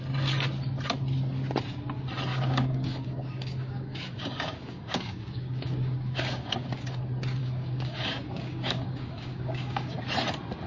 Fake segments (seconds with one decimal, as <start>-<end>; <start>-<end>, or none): 2.3-6.9; 7.4-10.0